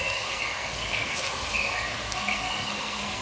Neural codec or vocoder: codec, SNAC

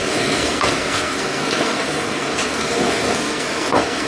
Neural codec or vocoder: codec, SNAC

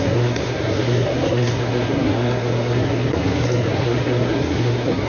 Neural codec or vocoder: codec, SNAC